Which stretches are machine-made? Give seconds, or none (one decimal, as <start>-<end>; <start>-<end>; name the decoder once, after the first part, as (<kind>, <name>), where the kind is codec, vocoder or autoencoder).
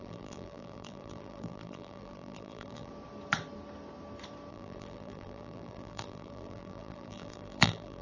0.0-2.9 (vocoder, BigVGAN v2); 4.5-8.0